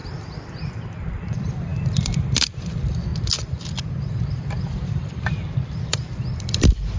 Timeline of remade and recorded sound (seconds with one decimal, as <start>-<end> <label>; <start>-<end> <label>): 0.0-0.7 recorded; 0.7-3.1 remade; 3.1-4.2 recorded; 4.2-7.0 remade